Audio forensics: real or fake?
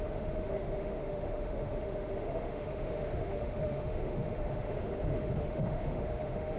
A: fake